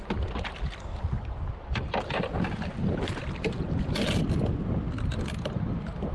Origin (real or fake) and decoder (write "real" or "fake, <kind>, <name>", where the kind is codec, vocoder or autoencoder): real